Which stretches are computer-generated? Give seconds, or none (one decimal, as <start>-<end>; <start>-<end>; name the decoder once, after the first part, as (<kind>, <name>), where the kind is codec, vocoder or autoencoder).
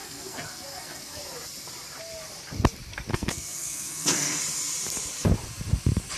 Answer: 0.0-1.2 (codec, SNAC); 3.1-4.4